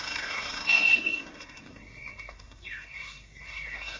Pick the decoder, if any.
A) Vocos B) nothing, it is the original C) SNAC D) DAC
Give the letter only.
C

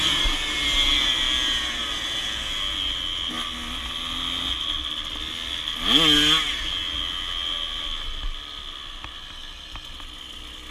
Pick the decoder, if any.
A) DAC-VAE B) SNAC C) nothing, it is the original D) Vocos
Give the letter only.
C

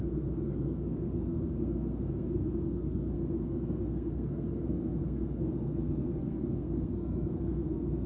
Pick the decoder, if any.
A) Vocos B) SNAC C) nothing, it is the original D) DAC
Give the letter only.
B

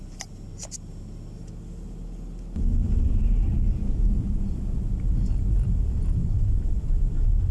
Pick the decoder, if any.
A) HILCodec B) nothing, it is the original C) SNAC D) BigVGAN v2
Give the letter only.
B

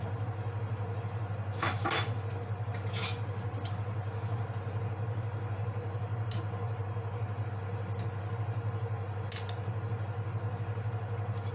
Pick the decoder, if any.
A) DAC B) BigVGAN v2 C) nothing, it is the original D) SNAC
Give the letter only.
C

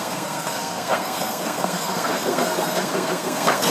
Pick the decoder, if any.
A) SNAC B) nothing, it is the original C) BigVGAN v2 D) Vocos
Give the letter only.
A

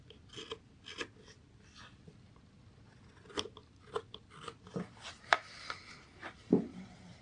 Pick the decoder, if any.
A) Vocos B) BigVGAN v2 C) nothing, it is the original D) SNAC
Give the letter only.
C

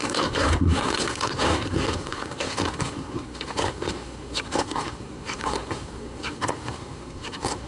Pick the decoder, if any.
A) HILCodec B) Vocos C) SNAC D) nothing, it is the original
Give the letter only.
C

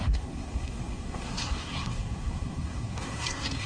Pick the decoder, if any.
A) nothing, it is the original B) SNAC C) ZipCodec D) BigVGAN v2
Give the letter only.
B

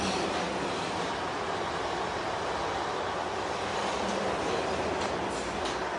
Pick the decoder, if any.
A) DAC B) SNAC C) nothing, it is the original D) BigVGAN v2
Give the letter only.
C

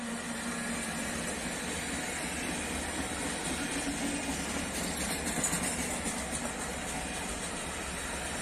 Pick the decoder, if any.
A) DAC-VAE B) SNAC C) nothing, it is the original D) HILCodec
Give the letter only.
C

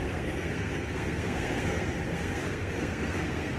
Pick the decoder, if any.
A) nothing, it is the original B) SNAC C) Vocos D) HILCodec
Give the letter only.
B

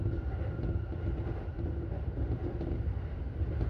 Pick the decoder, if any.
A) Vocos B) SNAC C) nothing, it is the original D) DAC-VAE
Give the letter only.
C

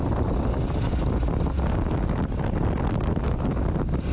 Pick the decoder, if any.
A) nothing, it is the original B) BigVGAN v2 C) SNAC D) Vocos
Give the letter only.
A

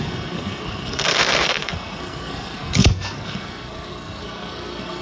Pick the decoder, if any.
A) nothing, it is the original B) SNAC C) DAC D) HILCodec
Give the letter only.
B